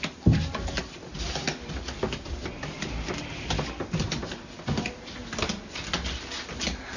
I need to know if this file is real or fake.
real